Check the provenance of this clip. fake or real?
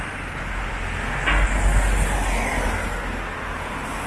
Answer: real